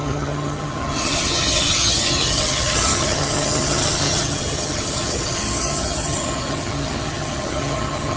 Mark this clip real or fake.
fake